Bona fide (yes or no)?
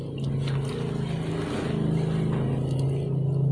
yes